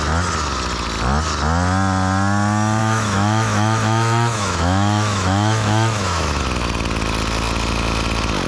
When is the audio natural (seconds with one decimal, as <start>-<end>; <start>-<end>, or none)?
0.0-2.8; 6.4-8.5